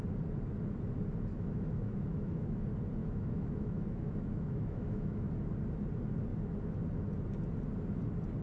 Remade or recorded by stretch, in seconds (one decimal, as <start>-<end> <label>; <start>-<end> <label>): 0.0-1.3 recorded; 1.3-2.6 remade; 2.6-3.0 recorded; 3.0-5.3 remade; 5.3-8.4 recorded